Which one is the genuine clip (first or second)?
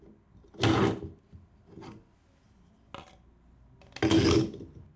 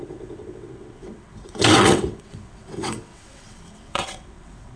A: first